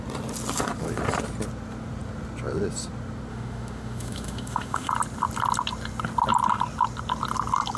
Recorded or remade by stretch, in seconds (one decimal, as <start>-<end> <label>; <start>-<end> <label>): 0.0-3.3 recorded; 3.3-4.9 remade; 4.9-7.8 recorded